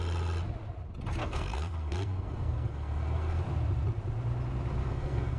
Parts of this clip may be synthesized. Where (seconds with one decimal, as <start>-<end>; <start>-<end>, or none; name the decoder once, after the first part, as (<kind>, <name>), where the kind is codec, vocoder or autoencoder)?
1.2-3.4 (codec, SNAC); 4.8-5.4